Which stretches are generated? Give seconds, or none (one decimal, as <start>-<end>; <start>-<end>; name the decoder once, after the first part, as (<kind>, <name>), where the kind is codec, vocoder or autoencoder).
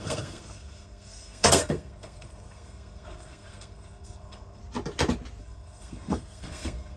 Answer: 0.0-4.6 (codec, SNAC); 5.4-7.0